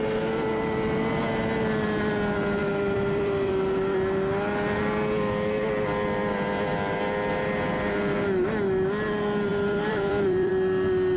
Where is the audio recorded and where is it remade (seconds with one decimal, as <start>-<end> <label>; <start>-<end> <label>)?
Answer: 0.0-2.6 recorded; 2.6-3.6 remade; 3.6-9.5 recorded; 9.5-10.5 remade; 10.5-11.2 recorded

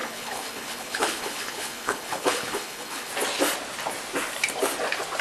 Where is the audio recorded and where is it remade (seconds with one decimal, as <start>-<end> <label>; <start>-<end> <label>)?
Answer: 0.0-3.1 remade; 3.1-5.2 recorded

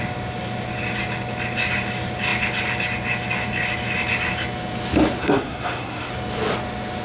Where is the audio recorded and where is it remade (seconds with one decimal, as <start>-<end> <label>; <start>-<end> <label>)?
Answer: 0.0-5.2 recorded; 5.2-6.1 remade; 6.1-7.0 recorded

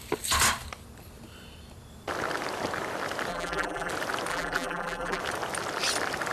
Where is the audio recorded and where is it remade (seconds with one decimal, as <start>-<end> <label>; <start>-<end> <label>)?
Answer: 0.0-3.3 recorded; 3.3-3.9 remade; 3.9-4.3 recorded; 4.3-5.2 remade; 5.2-6.3 recorded